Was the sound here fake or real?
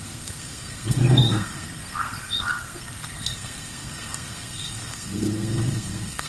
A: fake